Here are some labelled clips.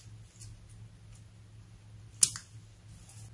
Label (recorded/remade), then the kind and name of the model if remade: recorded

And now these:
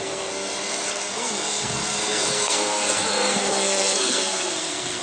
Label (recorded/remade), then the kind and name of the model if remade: remade, codec, SNAC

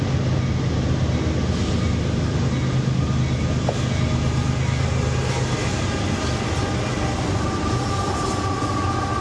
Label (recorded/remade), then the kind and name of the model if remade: recorded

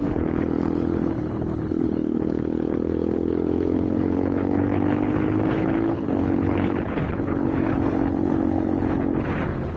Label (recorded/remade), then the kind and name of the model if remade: remade, codec, HILCodec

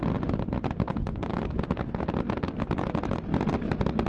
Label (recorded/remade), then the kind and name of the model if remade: recorded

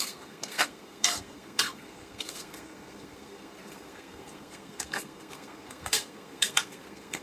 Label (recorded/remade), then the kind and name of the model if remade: remade, codec, SNAC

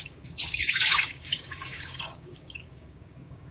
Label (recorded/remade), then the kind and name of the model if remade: remade, codec, DAC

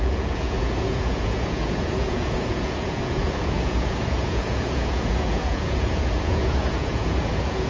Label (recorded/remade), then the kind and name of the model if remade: remade, vocoder, Vocos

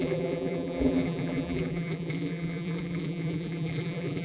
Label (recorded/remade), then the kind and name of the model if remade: remade, vocoder, BigVGAN v2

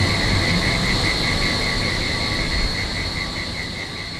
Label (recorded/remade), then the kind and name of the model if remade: recorded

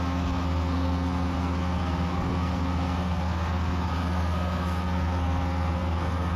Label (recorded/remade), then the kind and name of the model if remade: remade, codec, SNAC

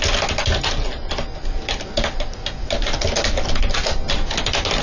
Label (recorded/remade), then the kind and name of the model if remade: recorded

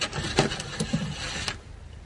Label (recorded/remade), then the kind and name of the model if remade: recorded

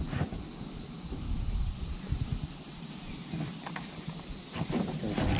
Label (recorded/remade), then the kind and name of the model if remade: recorded